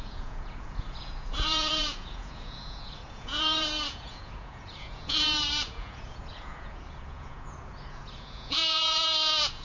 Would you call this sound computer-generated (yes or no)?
yes